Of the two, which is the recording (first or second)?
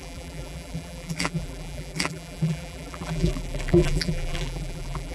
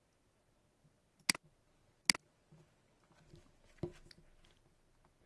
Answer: second